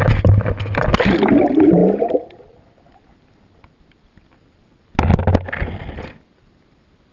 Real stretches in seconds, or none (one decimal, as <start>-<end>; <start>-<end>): 0.0-7.1